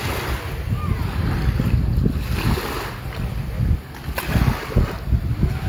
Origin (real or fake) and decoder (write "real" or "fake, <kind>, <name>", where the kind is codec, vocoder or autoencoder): real